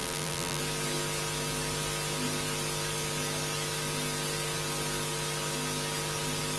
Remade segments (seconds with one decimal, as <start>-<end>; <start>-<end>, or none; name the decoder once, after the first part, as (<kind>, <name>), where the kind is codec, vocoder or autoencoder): 0.0-0.6 (vocoder, BigVGAN v2)